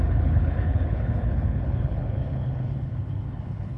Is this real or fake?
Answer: fake